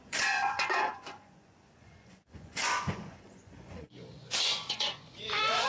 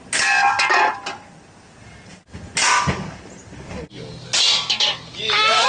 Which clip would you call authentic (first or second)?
second